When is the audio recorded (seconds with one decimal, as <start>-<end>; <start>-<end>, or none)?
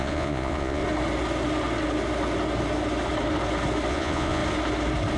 0.8-3.9; 4.4-5.2